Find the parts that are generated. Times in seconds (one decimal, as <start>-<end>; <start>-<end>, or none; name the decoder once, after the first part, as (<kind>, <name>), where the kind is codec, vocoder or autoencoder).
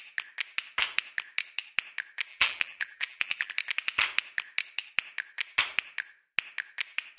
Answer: 2.3-3.5 (vocoder, BigVGAN v2)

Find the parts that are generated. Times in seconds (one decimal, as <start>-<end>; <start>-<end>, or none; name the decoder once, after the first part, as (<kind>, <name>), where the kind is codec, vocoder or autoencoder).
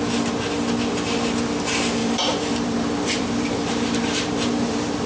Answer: 2.0-5.1 (vocoder, BigVGAN v2)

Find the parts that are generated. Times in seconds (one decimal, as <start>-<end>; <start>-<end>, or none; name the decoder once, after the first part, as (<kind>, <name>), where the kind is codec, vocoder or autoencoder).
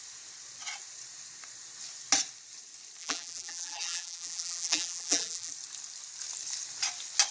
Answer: 3.0-5.5 (vocoder, BigVGAN v2)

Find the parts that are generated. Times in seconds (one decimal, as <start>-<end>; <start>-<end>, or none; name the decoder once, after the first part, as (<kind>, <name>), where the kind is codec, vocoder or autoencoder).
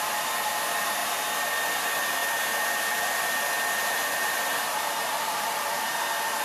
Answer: 2.2-3.3 (vocoder, BigVGAN v2); 3.8-5.9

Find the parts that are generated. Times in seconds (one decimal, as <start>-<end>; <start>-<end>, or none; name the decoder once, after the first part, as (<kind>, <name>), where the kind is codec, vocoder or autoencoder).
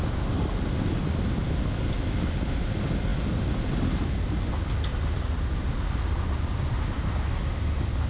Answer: 3.1-4.1 (vocoder, BigVGAN v2); 4.9-6.0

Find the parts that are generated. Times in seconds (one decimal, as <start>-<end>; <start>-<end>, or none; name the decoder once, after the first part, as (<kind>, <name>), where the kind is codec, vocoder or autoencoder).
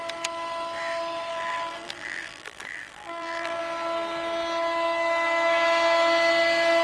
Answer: 1.3-3.6 (vocoder, BigVGAN v2)